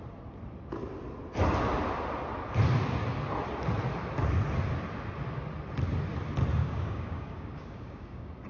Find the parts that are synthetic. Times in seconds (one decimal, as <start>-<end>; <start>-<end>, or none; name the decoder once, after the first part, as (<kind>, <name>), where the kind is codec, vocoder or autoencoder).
6.6-8.5 (codec, DAC)